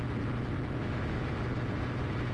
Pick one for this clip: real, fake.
real